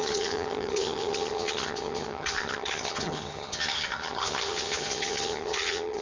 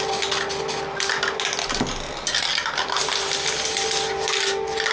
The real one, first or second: second